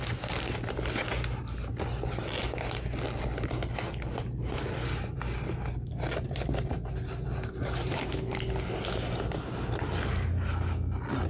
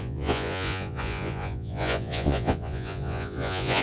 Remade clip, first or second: second